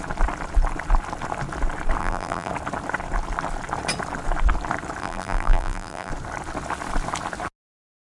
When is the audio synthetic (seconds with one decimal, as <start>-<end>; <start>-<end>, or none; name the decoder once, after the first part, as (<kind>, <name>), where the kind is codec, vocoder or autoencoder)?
2.0-2.5 (vocoder, BigVGAN v2); 5.0-6.1

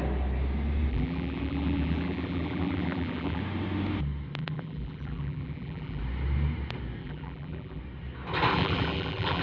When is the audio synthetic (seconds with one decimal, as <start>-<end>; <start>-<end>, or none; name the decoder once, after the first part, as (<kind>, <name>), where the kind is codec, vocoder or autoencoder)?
0.9-3.4 (vocoder, BigVGAN v2); 4.4-6.0; 7.0-7.8; 8.5-9.4

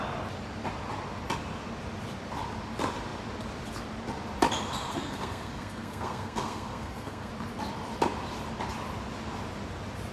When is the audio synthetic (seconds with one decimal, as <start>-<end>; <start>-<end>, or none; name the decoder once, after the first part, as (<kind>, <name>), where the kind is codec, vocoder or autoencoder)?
4.9-7.3 (codec, SNAC)

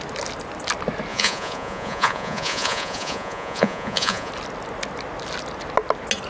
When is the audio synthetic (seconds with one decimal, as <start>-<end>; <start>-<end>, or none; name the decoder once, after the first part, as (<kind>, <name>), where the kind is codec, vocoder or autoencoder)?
1.1-4.3 (vocoder, Vocos)

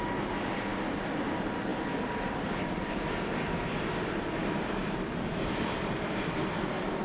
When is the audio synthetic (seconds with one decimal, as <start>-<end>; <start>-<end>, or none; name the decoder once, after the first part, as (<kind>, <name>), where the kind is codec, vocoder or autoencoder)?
1.7-2.9 (vocoder, BigVGAN v2); 4.8-7.0

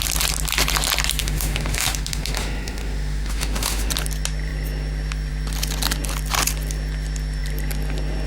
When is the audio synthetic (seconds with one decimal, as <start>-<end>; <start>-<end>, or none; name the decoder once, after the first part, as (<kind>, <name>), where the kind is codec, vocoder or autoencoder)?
1.2-3.9 (autoencoder, DAC-VAE)